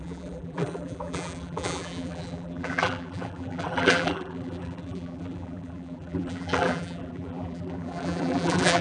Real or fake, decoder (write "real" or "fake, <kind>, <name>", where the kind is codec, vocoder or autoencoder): fake, vocoder, BigVGAN v2